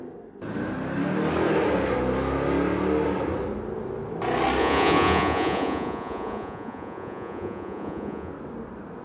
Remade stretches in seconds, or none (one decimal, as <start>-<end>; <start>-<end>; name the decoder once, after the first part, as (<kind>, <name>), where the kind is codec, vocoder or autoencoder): 4.6-8.3 (vocoder, Vocos)